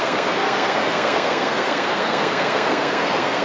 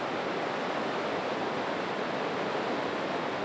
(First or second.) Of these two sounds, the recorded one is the second